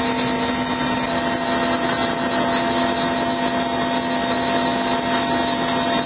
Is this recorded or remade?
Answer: recorded